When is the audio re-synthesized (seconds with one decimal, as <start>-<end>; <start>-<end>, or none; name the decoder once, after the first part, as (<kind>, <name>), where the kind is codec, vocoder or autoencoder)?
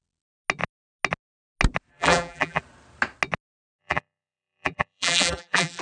1.9-2.6 (vocoder, BigVGAN v2); 3.8-5.8